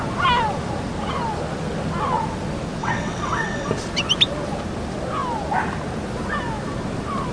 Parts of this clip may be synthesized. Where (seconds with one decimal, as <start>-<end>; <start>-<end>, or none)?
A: 2.8-3.7